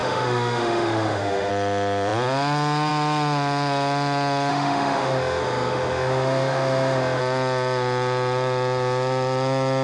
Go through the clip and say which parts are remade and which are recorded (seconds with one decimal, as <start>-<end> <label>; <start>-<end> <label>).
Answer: 0.0-1.5 remade; 1.5-4.5 recorded; 4.5-7.2 remade; 7.2-9.8 recorded